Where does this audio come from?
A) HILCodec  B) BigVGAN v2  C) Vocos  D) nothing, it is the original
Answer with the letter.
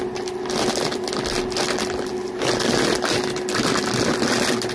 D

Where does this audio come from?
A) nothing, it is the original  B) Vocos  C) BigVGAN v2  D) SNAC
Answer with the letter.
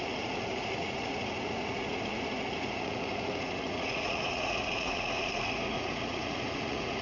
B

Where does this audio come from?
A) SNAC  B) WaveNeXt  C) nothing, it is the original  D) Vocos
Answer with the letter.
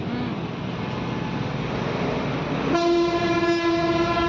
C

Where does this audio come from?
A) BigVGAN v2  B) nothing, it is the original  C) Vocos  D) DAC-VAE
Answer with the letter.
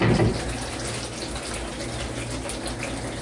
B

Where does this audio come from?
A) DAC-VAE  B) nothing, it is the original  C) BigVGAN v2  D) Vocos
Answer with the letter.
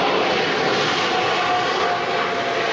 B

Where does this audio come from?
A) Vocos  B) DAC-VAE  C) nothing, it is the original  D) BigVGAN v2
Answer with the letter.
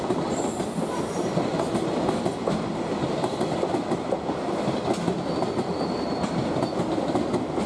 C